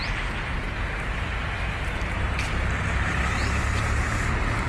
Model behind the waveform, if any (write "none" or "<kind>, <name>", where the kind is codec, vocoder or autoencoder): none